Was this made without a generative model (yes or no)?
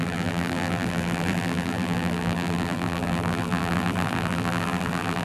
no